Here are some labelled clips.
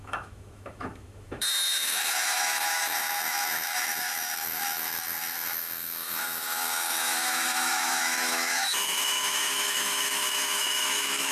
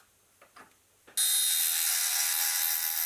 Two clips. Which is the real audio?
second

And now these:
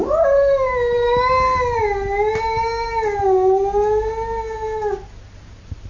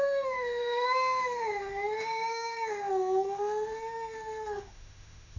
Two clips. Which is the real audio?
first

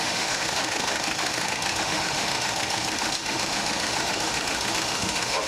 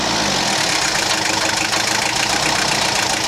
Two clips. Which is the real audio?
second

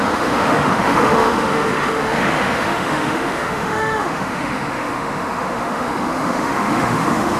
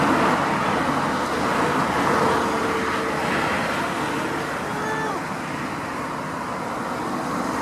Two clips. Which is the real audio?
second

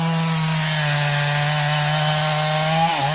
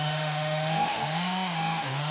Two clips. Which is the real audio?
first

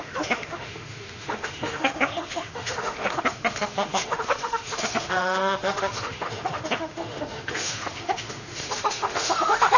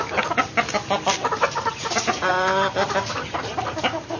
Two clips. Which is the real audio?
second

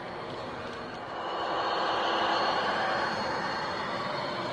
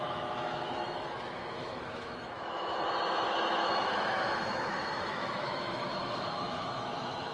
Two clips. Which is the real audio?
first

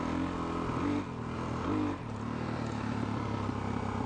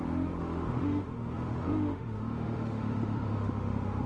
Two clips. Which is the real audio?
first